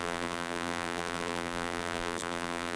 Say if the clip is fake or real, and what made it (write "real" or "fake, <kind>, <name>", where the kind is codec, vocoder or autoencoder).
fake, vocoder, BigVGAN v2